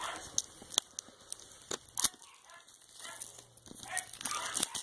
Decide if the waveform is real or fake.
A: real